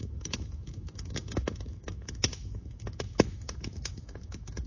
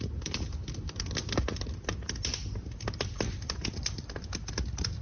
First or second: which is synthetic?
first